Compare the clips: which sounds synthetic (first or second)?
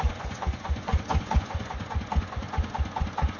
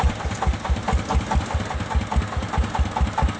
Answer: first